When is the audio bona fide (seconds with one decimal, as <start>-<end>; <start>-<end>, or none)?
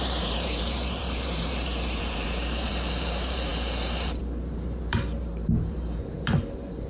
none